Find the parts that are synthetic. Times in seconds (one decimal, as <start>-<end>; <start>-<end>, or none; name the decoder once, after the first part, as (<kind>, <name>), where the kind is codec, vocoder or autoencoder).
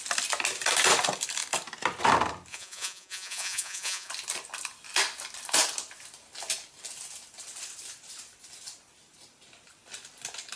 2.5-4.1 (vocoder, Vocos)